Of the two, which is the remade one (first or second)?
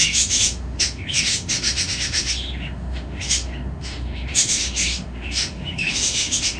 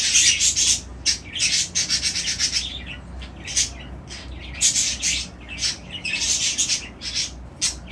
first